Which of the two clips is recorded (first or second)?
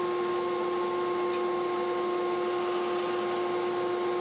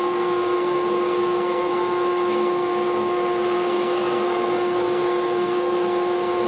first